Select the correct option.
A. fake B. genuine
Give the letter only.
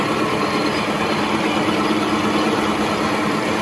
A